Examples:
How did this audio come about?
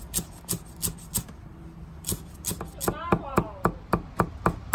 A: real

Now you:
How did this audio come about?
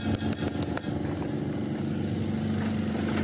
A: real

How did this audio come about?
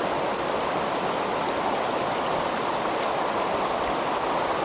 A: real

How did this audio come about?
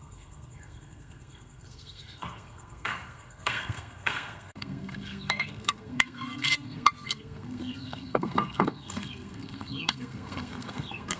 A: fake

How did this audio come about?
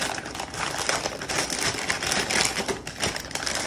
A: real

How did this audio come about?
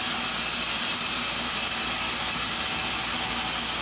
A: real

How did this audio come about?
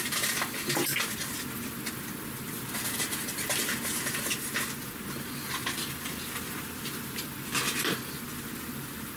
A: real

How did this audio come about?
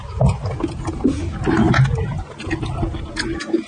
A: real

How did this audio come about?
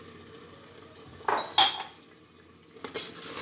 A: real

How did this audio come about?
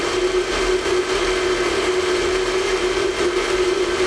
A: real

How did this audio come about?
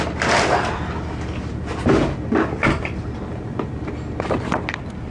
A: real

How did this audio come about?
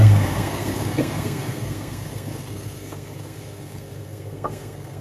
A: fake